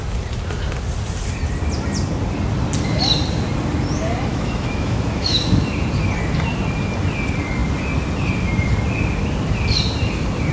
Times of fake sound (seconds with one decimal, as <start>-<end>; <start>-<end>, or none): 4.3-5.7

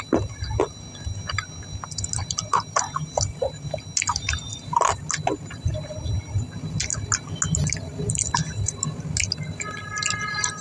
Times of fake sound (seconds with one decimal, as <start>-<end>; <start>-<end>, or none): none

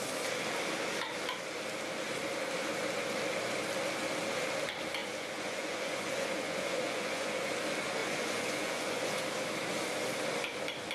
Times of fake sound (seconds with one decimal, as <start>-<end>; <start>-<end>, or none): 5.0-7.5; 8.0-9.2

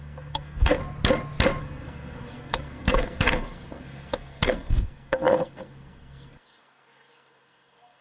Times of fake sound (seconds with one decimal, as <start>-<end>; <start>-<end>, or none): 0.0-0.8; 1.6-8.0

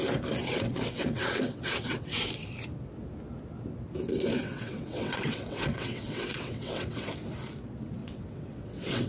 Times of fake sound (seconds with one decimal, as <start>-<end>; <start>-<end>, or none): 0.4-2.3; 4.4-7.1; 8.0-9.1